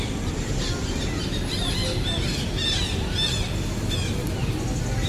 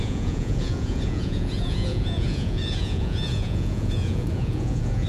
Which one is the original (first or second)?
first